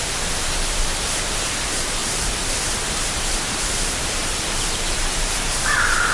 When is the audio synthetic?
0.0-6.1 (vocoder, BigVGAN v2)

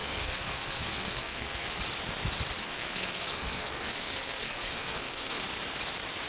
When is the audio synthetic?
0.0-1.8 (codec, SNAC); 2.6-5.4

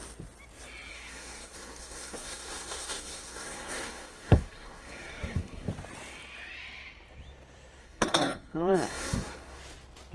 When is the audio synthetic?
0.9-5.7 (codec, SNAC); 7.8-9.6

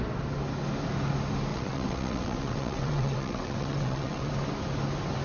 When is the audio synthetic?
1.5-4.3 (vocoder, WaveNeXt)

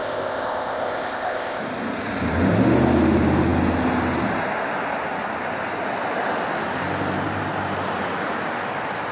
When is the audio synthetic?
0.0-1.6 (codec, ZipCodec)

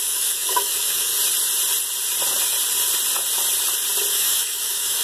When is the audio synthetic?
0.0-1.1 (autoencoder, DAC-VAE); 4.1-5.0